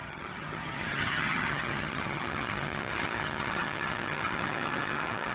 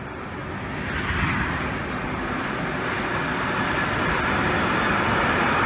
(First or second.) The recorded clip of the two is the second